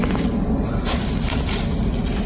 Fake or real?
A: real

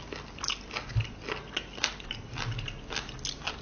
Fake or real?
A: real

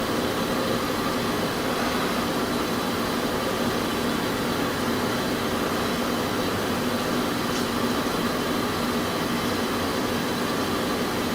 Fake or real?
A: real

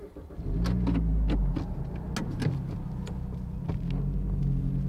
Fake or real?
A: real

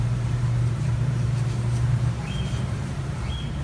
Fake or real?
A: fake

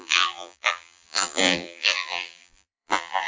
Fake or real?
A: fake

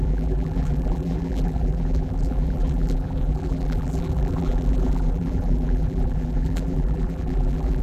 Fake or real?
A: fake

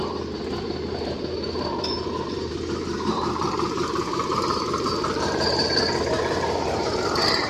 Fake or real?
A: fake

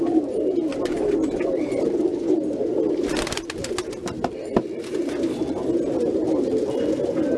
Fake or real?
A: real